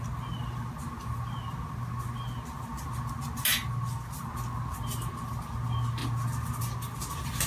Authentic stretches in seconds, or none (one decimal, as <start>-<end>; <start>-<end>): 0.0-7.5